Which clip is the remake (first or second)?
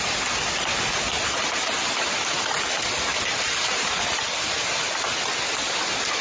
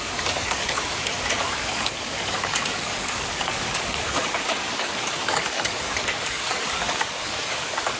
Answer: second